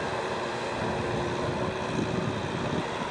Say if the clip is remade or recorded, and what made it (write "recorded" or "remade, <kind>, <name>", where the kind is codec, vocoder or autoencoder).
recorded